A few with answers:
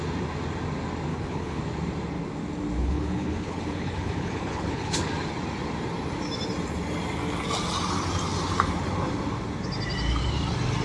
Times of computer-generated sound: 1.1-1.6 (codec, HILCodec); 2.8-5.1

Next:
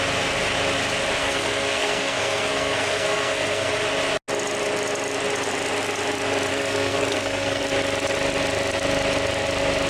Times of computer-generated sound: 1.2-3.7 (codec, SNAC); 6.5-7.6

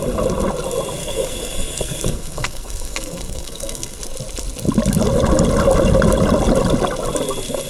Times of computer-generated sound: 1.0-4.0 (codec, SNAC)

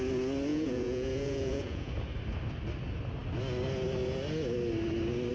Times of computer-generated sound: 0.5-1.9 (vocoder, Vocos)

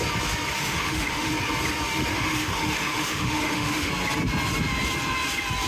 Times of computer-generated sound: 0.6-1.3 (autoencoder, DAC-VAE); 2.1-3.9

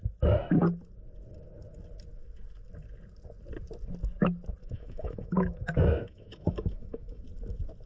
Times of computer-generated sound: 4.6-7.2 (autoencoder, DAC-VAE)

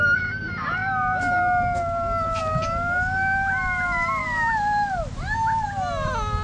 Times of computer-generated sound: none

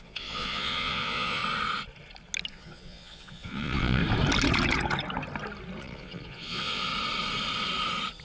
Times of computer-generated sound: 0.0-1.4 (vocoder, Vocos); 2.5-4.0; 5.8-6.9